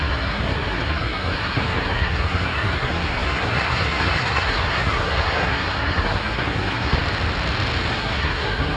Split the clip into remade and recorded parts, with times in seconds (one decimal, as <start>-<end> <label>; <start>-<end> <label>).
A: 0.0-7.0 remade; 7.0-7.9 recorded; 7.9-8.8 remade